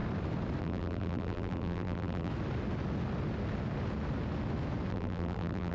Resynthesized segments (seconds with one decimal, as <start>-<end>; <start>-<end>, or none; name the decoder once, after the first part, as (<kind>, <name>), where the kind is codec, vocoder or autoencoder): 0.6-2.3 (vocoder, BigVGAN v2); 4.9-5.7